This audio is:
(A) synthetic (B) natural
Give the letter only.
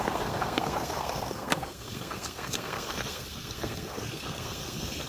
A